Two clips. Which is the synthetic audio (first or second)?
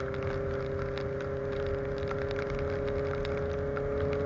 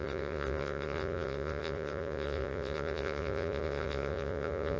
second